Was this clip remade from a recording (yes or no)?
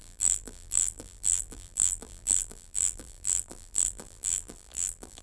yes